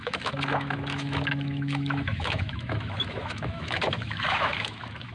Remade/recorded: remade